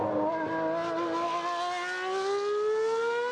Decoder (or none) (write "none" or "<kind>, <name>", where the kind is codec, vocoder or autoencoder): none